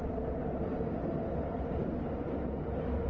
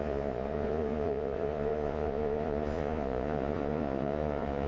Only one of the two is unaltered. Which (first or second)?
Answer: first